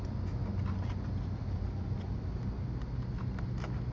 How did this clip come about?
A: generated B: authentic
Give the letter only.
B